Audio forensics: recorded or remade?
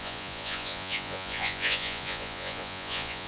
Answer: remade